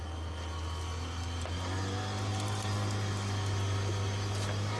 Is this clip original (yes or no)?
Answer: yes